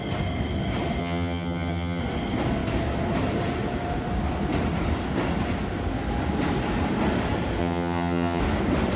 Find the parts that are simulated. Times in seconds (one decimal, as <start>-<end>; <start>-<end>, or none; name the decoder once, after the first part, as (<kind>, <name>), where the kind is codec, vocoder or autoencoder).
1.0-2.0 (vocoder, HiFi-GAN); 7.6-8.4